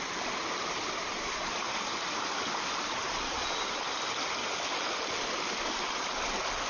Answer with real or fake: real